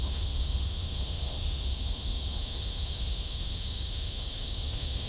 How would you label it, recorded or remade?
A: remade